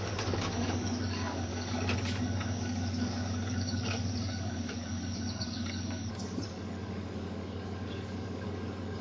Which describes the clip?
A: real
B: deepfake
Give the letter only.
B